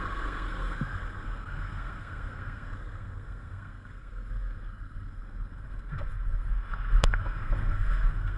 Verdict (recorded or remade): remade